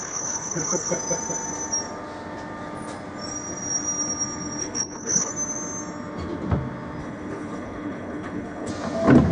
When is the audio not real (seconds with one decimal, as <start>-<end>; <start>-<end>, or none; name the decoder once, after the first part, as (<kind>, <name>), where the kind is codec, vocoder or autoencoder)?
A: 0.0-0.9 (codec, HILCodec); 4.6-5.3; 7.0-8.7